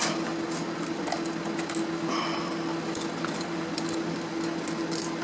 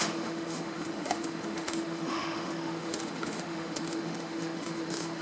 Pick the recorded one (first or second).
first